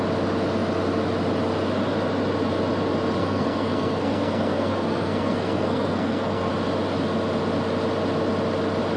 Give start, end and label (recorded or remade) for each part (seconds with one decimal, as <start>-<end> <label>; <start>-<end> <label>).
0.0-3.2 recorded; 3.2-6.5 remade; 6.5-9.0 recorded